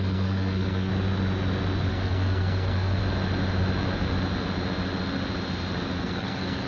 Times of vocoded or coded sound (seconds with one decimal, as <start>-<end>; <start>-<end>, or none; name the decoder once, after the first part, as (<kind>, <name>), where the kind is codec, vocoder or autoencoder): 0.0-0.9 (codec, SNAC); 1.9-3.0; 6.0-6.7